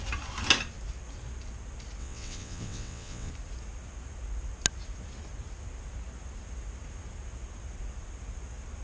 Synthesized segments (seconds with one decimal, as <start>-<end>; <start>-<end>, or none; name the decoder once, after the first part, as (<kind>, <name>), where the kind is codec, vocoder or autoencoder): 2.0-3.3 (vocoder, WaveNeXt)